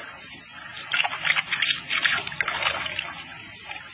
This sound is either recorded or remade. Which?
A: recorded